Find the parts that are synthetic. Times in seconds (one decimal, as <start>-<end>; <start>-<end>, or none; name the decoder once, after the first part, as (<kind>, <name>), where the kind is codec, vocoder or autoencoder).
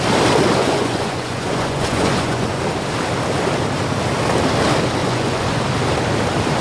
0.6-2.6 (vocoder, Vocos); 5.0-5.6